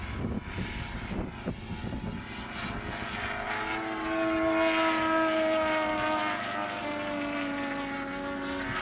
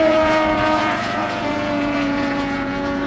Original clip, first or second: first